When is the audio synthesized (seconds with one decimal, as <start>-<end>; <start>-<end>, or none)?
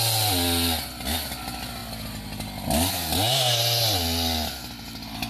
none